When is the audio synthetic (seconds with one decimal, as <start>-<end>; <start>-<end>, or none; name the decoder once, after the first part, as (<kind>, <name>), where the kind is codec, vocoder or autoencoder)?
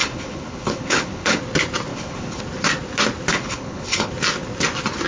0.0-1.4 (codec, HILCodec); 1.9-2.4; 3.3-4.1